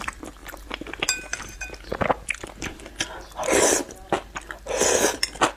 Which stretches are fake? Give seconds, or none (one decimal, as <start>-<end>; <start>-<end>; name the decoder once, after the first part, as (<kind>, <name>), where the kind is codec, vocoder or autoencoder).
0.0-1.9 (vocoder, BigVGAN v2)